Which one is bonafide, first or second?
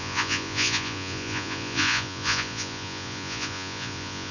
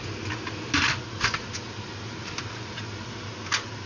second